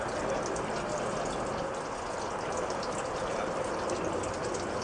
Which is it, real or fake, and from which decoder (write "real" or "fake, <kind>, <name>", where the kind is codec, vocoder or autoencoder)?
real